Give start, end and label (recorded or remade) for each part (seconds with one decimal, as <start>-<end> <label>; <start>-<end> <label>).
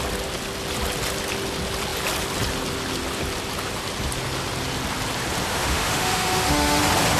0.0-5.5 recorded; 5.5-6.8 remade; 6.8-7.2 recorded